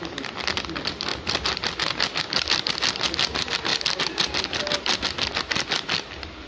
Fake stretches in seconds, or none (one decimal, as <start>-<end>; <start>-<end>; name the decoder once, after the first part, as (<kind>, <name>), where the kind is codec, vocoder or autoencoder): none